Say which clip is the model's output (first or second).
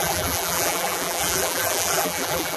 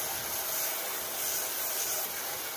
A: first